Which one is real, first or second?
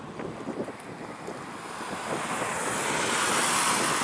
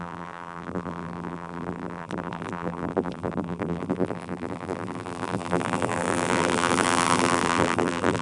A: first